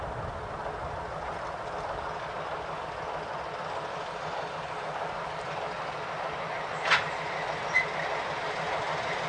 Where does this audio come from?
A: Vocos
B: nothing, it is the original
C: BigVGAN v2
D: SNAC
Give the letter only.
B